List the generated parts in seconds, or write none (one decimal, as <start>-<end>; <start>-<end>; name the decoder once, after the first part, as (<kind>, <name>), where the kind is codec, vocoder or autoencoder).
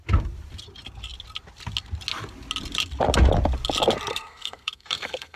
4.1-5.4 (codec, SNAC)